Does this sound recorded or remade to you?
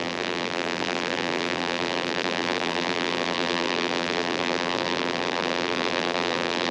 remade